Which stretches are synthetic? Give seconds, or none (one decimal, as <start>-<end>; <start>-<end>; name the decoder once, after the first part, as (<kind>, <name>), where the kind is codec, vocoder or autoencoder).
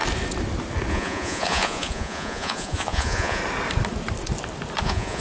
0.9-3.4 (vocoder, Vocos); 4.8-5.2